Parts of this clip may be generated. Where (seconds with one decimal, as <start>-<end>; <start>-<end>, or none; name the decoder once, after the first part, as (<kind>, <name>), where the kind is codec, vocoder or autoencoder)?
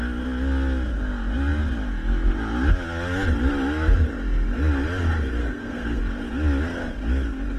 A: 5.4-6.0 (codec, SNAC)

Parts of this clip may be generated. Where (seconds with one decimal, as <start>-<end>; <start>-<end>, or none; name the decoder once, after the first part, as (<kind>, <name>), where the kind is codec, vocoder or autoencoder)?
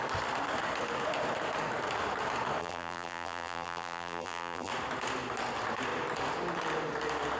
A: 2.6-4.7 (vocoder, BigVGAN v2)